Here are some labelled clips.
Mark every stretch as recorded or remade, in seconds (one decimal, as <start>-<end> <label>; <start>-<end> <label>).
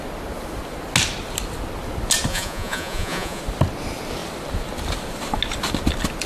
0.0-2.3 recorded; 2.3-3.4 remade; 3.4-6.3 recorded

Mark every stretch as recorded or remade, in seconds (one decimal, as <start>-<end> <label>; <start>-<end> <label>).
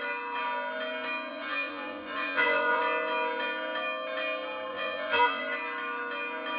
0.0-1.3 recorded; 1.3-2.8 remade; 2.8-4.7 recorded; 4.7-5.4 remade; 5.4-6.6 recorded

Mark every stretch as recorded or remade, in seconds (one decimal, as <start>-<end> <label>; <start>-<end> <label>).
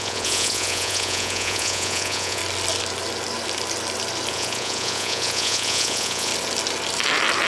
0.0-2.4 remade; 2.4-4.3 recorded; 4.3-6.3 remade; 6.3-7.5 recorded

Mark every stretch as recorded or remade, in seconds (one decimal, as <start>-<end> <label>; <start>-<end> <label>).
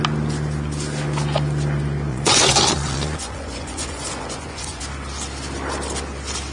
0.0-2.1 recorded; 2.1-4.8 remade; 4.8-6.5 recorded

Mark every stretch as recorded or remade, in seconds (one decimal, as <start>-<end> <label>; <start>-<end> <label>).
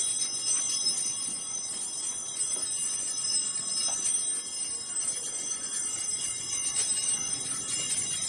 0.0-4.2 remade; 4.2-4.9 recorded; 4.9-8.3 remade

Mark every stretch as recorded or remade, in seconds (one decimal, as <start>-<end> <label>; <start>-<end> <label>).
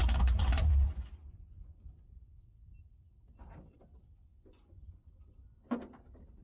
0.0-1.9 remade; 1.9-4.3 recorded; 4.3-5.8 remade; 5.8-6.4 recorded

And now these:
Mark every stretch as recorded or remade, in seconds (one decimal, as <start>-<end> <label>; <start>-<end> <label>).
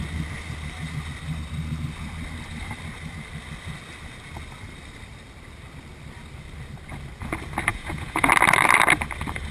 0.0-7.7 recorded; 7.7-8.3 remade; 8.3-9.5 recorded